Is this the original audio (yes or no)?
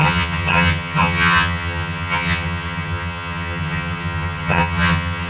no